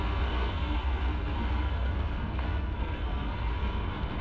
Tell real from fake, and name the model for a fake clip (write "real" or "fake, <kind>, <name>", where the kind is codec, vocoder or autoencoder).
fake, codec, SNAC